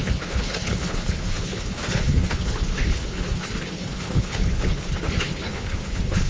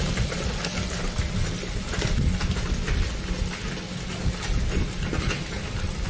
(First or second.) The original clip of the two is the second